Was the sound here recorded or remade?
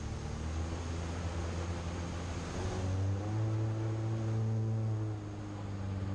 recorded